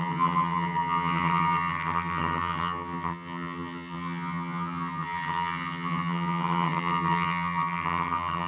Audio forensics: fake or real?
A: fake